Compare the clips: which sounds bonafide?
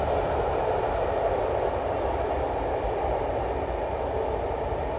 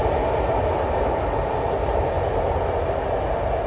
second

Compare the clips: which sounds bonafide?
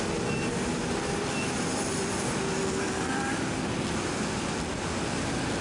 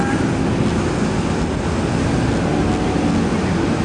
second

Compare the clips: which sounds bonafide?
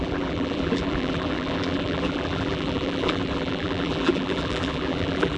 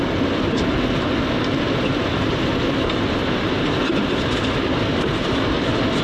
second